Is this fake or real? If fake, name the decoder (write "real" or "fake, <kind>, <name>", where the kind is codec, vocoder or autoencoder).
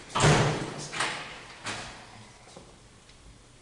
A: real